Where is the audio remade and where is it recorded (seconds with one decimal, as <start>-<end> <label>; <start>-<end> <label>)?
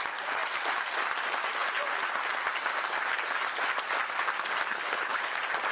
0.0-4.7 recorded; 4.7-5.3 remade; 5.3-5.7 recorded